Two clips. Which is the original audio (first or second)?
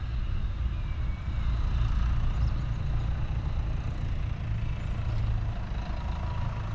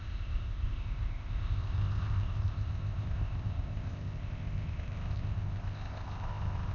first